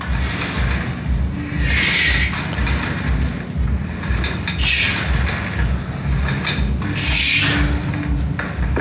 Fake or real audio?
real